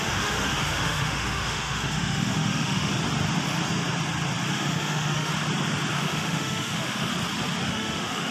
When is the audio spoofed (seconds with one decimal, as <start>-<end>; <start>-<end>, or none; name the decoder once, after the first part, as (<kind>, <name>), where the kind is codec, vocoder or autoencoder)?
0.0-2.9 (autoencoder, DAC-VAE); 4.5-5.3; 6.0-7.1; 7.7-8.3